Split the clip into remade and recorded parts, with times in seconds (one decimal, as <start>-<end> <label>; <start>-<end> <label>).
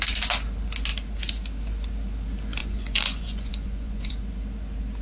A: 0.0-2.6 recorded; 2.6-4.1 remade; 4.1-5.0 recorded